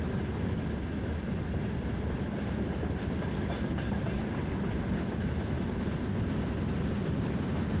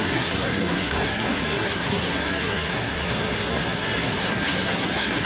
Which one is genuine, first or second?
first